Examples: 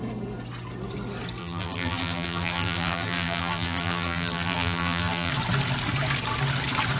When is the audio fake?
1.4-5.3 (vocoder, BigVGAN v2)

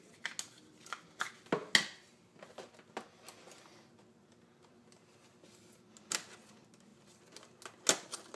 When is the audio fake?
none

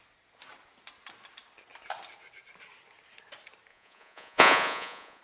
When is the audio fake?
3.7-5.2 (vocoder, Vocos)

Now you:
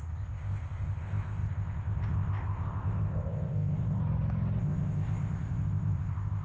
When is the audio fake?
0.0-4.0 (codec, ZipCodec); 4.6-6.4

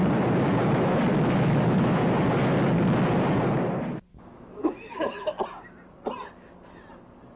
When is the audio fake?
1.1-2.0 (autoencoder, DAC-VAE); 4.1-5.3